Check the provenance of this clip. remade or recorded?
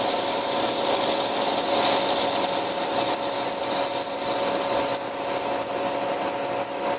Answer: recorded